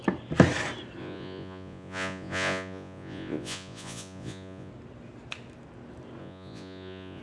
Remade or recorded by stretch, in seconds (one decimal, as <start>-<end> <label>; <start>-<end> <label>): 0.0-1.0 recorded; 1.0-4.7 remade; 4.7-6.2 recorded; 6.2-7.2 remade